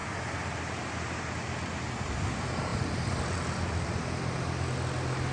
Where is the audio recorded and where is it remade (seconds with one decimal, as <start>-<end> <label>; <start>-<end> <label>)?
0.0-5.3 recorded